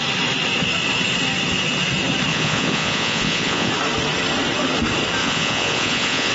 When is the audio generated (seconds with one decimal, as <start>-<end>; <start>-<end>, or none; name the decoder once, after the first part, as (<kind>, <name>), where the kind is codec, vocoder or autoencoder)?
2.3-3.7 (vocoder, Vocos); 5.2-6.3